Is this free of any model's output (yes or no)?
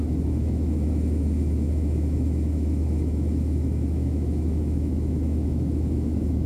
no